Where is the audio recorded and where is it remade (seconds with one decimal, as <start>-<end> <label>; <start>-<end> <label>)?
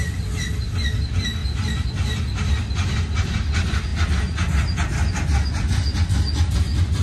0.0-7.0 recorded